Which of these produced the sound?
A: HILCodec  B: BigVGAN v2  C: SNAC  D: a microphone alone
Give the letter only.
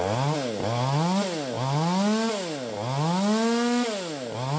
D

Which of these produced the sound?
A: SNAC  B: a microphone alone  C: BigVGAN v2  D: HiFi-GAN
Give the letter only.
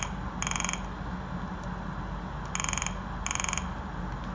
B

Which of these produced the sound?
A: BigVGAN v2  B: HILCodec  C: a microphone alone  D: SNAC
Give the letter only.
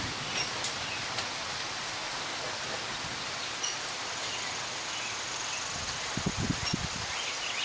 C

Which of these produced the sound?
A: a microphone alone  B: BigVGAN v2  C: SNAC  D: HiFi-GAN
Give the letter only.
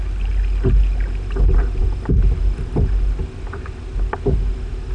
A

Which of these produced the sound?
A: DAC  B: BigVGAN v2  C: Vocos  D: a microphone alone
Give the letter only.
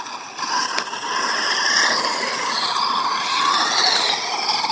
D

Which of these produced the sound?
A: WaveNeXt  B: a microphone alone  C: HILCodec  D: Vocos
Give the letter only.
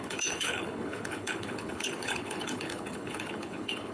C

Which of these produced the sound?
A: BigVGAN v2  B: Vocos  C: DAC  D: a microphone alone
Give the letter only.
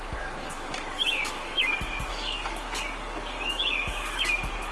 C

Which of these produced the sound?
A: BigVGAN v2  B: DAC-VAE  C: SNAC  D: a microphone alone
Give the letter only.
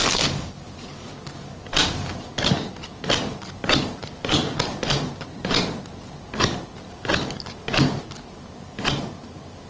D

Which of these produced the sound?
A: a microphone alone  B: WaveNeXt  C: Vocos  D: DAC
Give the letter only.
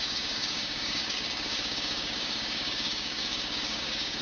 D